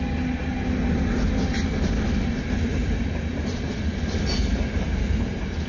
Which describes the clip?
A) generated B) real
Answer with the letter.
B